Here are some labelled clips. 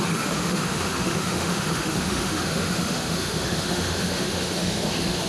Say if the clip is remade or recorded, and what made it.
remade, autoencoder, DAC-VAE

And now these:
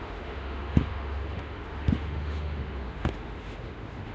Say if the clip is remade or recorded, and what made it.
remade, autoencoder, DAC-VAE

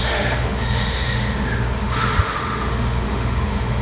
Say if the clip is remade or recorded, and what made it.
remade, autoencoder, DAC-VAE